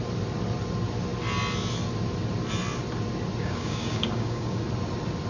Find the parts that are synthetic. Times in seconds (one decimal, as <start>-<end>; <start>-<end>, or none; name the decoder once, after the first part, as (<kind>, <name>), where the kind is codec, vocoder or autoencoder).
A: 3.4-4.6 (codec, DAC)